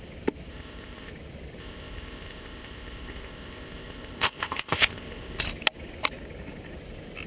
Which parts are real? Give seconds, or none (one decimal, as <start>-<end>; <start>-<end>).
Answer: 0.0-0.5; 1.1-1.6; 5.4-7.3